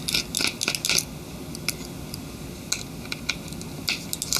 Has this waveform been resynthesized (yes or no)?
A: no